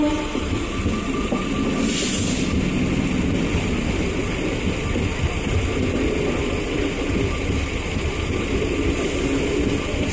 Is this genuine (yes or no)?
yes